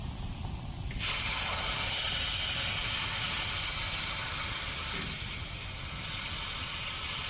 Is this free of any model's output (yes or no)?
yes